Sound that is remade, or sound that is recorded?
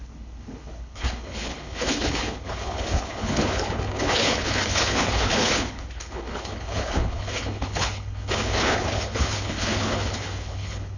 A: remade